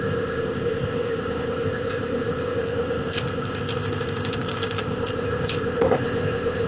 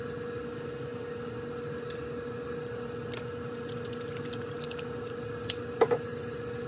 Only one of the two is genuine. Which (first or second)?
second